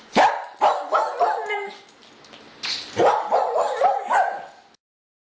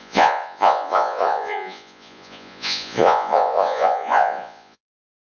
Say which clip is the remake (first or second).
second